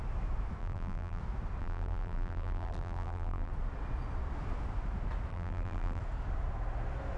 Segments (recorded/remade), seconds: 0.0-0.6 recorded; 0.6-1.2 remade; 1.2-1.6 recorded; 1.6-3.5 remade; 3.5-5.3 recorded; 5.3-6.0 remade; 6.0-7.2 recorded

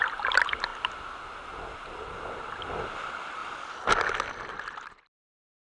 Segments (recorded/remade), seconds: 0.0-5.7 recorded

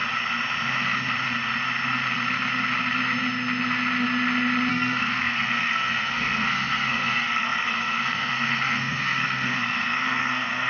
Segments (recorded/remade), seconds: 0.0-4.7 recorded; 4.7-10.7 remade